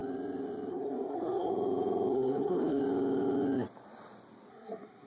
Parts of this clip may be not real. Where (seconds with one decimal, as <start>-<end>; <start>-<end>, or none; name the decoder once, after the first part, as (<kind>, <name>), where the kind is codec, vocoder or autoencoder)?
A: 0.7-1.5 (codec, SNAC); 2.1-2.8; 4.5-5.1